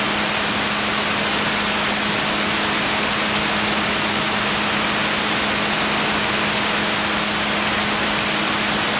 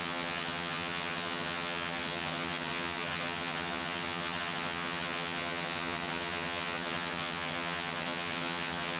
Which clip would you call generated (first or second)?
second